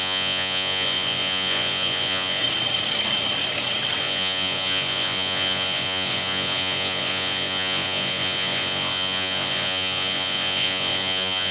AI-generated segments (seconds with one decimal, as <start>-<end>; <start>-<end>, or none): 0.0-2.4; 4.0-11.5